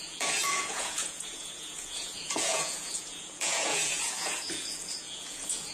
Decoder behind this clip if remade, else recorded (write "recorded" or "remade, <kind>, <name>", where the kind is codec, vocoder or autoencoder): remade, vocoder, Vocos